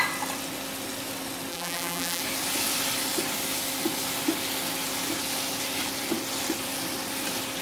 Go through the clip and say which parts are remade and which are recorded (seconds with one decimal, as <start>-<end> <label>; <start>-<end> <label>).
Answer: 0.0-1.5 recorded; 1.5-2.2 remade; 2.2-7.6 recorded